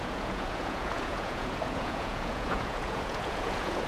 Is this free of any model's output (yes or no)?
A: no